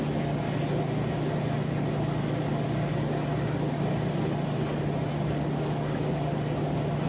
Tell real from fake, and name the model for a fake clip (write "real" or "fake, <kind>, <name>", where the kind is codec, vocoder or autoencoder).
real